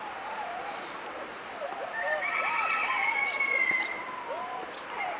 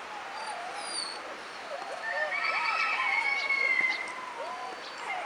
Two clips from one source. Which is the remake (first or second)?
first